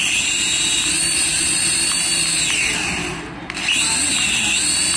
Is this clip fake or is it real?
real